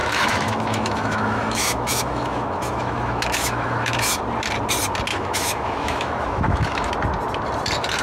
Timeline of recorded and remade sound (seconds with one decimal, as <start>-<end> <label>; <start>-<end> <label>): 0.0-4.2 remade; 4.2-5.1 recorded; 5.1-6.9 remade; 6.9-8.0 recorded